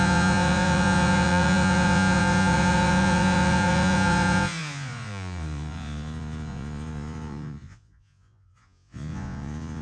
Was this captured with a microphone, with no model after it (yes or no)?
no